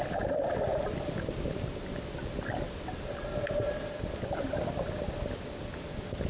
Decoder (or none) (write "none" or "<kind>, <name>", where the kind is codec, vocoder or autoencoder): none